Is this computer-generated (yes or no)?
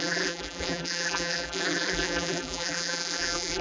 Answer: yes